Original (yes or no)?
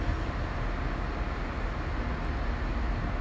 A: yes